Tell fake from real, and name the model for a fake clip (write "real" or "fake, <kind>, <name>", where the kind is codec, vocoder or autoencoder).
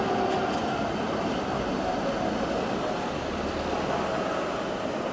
real